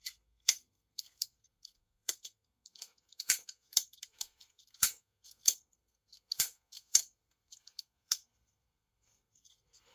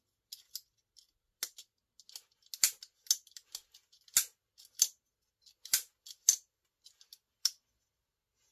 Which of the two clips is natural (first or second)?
second